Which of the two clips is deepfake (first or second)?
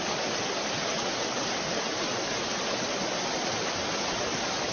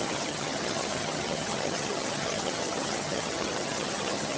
second